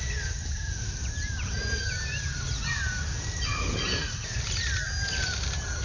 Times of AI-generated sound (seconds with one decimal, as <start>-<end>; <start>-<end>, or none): none